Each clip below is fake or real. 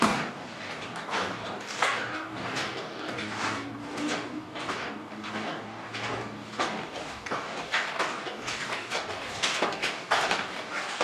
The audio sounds fake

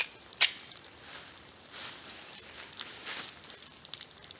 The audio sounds real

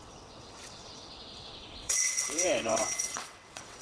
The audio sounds fake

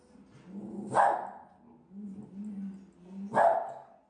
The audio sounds real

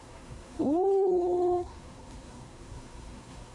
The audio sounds fake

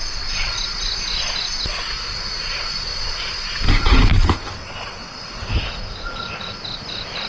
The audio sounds real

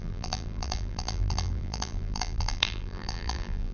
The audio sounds fake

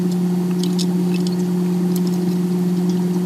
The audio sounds real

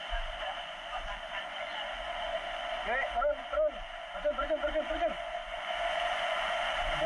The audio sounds fake